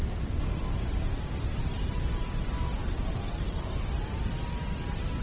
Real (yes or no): yes